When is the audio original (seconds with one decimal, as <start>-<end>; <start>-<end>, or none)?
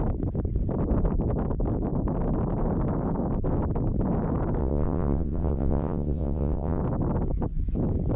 0.0-4.6; 6.8-8.2